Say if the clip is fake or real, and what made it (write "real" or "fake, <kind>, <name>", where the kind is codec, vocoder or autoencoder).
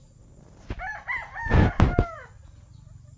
real